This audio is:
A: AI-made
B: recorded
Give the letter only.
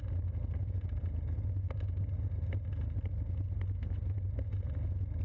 B